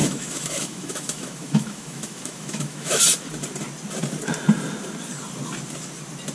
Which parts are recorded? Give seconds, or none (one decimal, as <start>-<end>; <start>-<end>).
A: 3.0-6.3